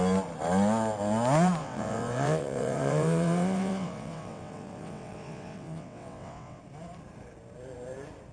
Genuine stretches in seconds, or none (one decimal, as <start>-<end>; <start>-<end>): 0.0-1.6; 6.6-8.3